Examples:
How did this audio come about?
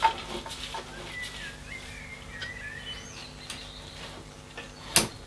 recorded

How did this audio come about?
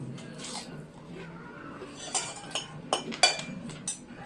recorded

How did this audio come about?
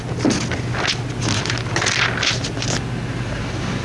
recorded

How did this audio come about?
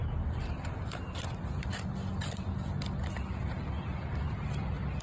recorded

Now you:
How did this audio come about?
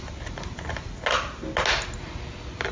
recorded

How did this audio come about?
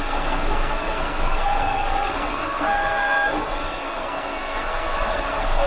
remade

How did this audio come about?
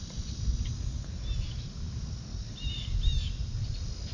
recorded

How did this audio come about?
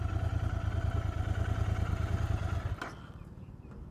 recorded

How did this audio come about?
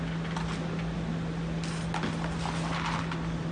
recorded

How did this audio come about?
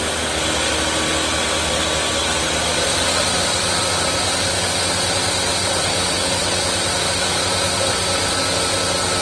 recorded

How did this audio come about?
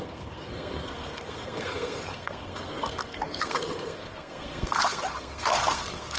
remade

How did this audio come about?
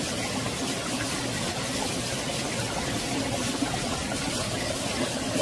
recorded